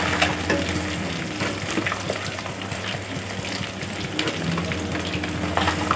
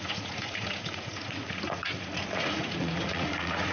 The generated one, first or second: second